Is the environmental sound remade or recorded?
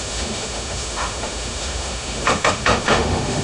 remade